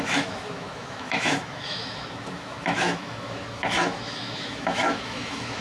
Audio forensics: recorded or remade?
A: remade